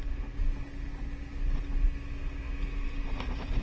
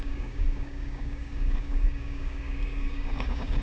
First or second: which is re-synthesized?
second